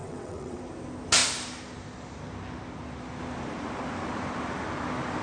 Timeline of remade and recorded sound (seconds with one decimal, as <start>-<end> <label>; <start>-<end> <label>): 0.0-0.6 remade; 0.6-5.2 recorded